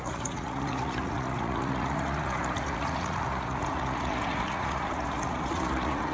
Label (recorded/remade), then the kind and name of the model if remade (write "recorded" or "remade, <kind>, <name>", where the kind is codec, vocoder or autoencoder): remade, vocoder, Vocos